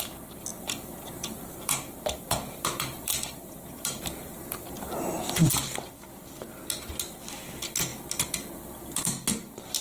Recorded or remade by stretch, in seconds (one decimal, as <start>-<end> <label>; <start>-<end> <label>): 0.0-0.5 recorded; 0.5-5.1 remade; 5.1-9.8 recorded